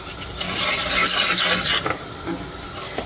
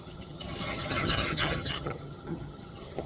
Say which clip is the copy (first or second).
second